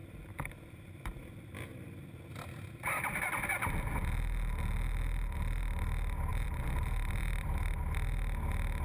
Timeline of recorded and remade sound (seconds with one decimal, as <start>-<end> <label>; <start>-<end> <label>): 0.0-3.3 remade; 3.3-6.3 recorded; 6.3-7.8 remade; 7.8-8.8 recorded